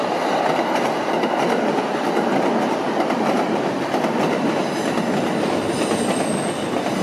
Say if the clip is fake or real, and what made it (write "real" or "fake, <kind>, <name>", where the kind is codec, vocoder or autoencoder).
real